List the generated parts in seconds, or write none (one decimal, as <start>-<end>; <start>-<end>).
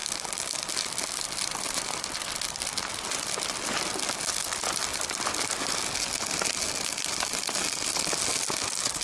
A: none